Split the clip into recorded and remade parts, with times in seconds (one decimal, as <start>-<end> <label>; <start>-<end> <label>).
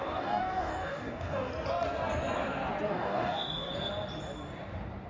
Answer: 0.0-1.5 remade; 1.5-2.9 recorded; 2.9-3.7 remade; 3.7-5.1 recorded